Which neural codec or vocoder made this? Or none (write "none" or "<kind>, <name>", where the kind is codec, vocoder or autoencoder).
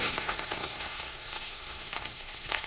codec, SNAC